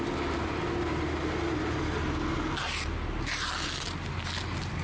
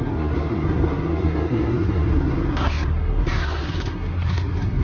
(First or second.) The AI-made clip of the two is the second